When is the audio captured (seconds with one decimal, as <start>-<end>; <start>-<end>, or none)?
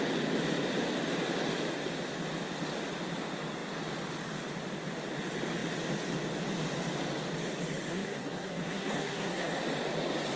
0.0-7.9; 9.5-10.4